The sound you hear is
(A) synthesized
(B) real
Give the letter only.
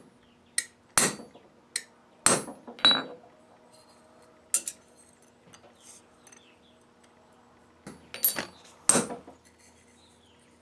B